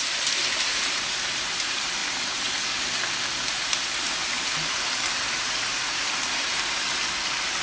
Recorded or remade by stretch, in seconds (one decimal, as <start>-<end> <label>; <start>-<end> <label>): 0.0-2.0 remade; 2.0-3.9 recorded; 3.9-7.6 remade

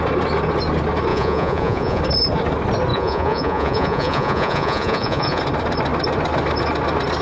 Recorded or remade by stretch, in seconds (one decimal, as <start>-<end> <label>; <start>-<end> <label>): 0.0-1.1 recorded; 1.1-2.0 remade; 2.0-2.9 recorded; 2.9-5.4 remade; 5.4-7.2 recorded